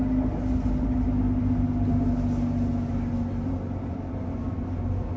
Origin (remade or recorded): recorded